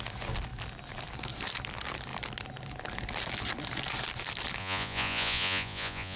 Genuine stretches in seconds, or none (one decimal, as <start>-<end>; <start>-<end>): 0.0-4.6